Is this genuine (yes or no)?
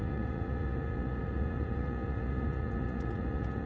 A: no